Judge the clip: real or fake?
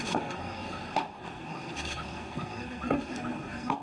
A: fake